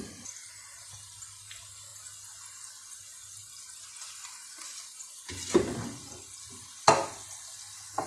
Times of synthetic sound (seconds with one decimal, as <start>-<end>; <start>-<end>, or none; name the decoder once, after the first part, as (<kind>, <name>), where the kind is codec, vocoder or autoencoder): none